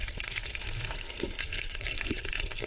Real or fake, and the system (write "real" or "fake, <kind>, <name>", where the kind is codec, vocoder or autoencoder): fake, codec, SNAC